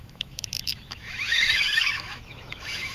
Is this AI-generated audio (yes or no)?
yes